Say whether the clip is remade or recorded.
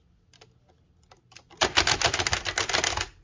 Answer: recorded